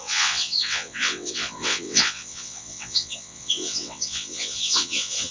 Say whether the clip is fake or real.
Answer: fake